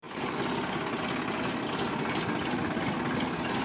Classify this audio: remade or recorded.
recorded